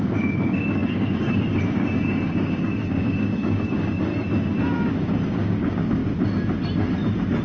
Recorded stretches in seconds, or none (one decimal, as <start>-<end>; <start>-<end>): 4.1-4.9; 6.0-7.4